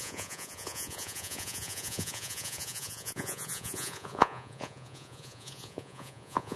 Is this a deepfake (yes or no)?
yes